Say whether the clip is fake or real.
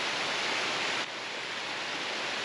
real